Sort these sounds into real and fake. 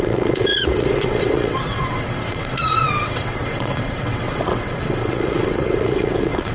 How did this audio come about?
fake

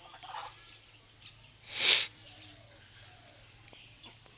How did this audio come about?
real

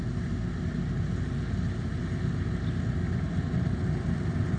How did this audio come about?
real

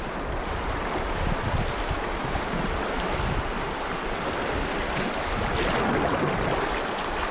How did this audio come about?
real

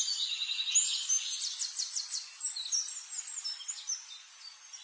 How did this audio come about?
real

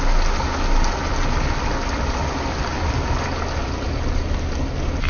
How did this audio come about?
real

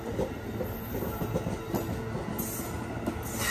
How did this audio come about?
real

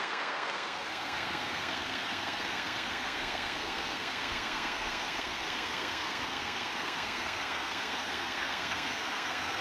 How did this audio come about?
fake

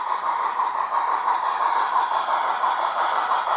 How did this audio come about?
fake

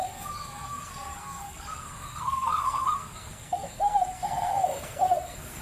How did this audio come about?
fake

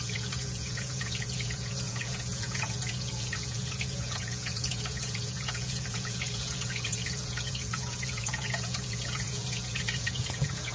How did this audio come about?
fake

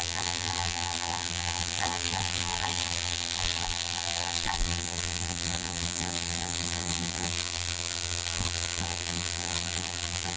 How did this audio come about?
fake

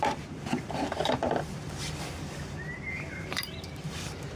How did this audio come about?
fake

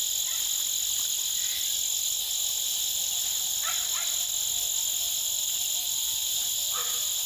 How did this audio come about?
real